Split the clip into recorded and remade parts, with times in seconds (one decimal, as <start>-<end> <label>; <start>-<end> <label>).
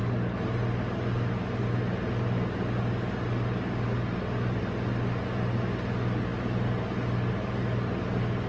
0.0-8.5 recorded